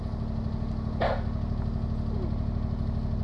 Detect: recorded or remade recorded